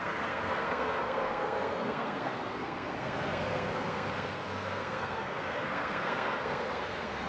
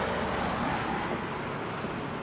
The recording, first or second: second